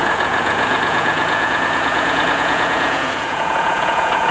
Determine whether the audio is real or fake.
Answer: fake